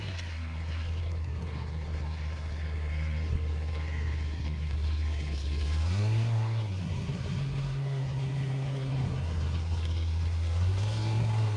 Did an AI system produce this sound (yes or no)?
yes